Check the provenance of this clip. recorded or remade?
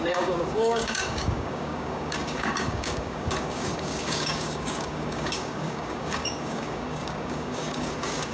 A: remade